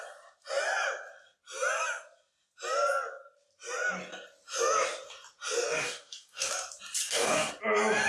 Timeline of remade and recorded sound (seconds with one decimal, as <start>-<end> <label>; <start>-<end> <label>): 0.0-5.8 recorded; 5.8-6.5 remade; 6.5-7.0 recorded; 7.0-7.5 remade; 7.5-8.1 recorded